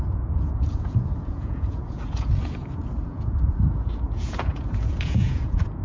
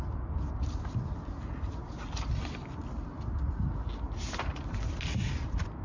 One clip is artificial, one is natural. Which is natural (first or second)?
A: second